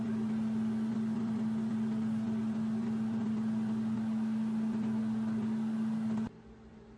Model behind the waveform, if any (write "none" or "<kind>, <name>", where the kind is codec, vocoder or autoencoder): none